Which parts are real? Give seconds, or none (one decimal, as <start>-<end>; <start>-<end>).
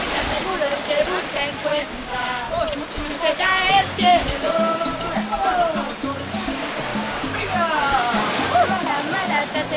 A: 0.0-1.7; 2.4-3.7; 4.9-6.9; 8.3-9.8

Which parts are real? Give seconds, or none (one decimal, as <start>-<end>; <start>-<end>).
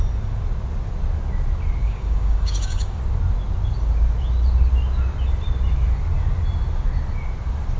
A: 0.0-1.8; 3.0-7.8